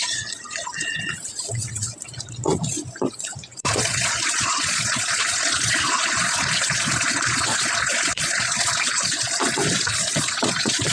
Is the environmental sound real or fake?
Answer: fake